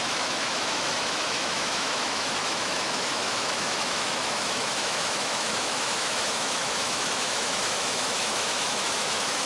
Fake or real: fake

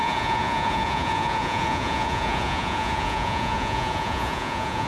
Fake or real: fake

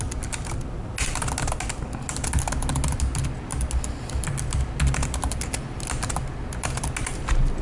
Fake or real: real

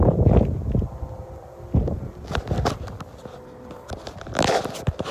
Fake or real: real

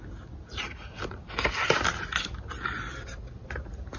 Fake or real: real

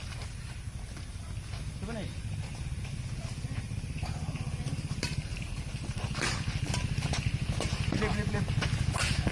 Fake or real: real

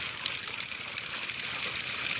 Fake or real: real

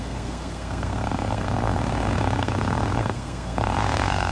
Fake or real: fake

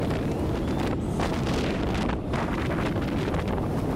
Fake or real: real